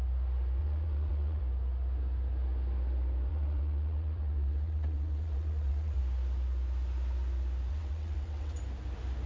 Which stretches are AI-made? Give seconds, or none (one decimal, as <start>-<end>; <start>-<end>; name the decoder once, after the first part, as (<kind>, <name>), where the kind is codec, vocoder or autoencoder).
0.6-1.4 (vocoder, WaveNeXt); 3.3-6.0; 7.7-8.6